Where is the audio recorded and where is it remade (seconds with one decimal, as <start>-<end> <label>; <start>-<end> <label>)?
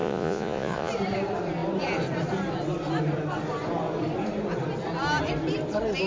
0.0-0.9 remade; 0.9-6.1 recorded